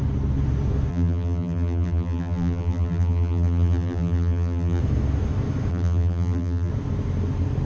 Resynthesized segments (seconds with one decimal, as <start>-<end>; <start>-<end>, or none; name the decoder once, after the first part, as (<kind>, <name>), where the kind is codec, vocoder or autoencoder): 0.9-4.8 (vocoder, BigVGAN v2); 5.7-6.7